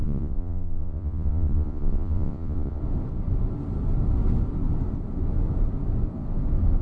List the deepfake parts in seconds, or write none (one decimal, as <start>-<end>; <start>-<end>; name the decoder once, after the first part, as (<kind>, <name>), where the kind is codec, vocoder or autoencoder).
0.0-2.8 (vocoder, Vocos)